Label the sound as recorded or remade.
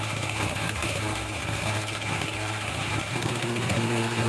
remade